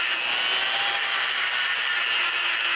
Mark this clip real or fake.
real